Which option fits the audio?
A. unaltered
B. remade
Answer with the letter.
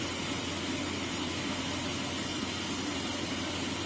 A